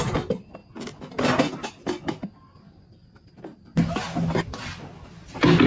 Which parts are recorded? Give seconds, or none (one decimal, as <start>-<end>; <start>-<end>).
0.0-5.7